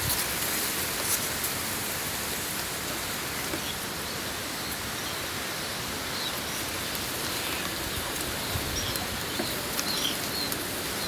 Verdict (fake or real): real